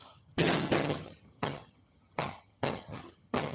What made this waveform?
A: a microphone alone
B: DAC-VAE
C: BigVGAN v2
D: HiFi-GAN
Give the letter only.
D